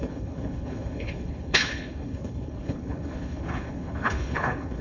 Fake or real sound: fake